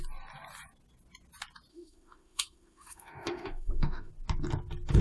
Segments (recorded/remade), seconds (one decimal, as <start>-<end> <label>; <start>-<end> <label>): 0.0-1.7 recorded; 1.7-4.1 remade; 4.1-5.0 recorded